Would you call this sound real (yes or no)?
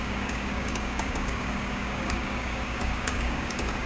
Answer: no